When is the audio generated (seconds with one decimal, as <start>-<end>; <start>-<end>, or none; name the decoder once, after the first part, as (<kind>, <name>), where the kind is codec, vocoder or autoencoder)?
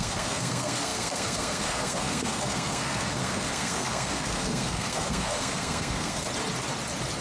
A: 0.0-6.2 (codec, SNAC)